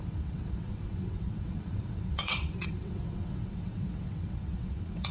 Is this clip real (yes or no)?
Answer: no